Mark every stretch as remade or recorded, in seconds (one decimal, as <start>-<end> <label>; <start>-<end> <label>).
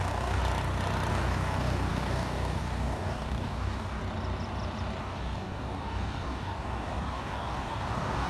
0.0-0.4 remade; 0.4-1.1 recorded; 1.1-4.0 remade; 4.0-5.0 recorded; 5.0-8.3 remade